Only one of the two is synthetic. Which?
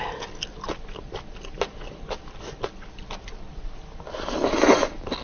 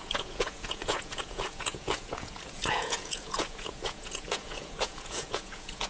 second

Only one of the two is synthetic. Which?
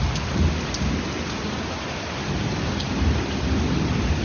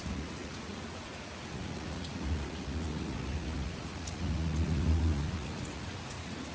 second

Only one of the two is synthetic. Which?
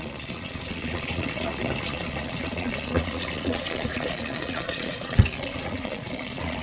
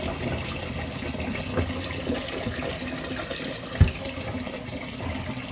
first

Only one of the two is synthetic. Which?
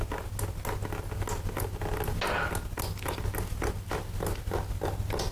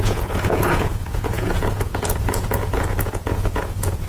second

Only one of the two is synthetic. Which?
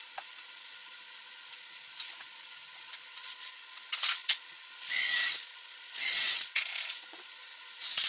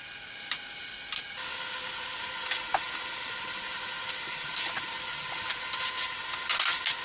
first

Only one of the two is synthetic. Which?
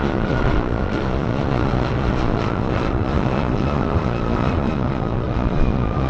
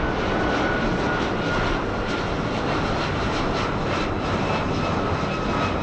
first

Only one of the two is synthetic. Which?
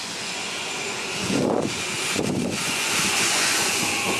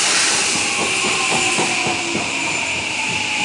first